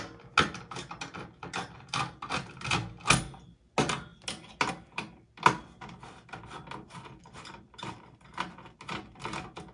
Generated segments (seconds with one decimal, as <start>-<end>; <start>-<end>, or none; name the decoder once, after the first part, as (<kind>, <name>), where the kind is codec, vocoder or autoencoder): none